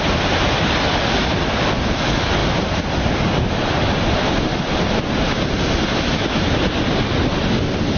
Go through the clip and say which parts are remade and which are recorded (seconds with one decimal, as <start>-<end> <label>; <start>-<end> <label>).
0.0-8.0 recorded